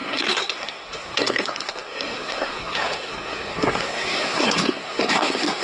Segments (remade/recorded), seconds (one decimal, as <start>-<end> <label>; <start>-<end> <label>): 0.0-5.6 remade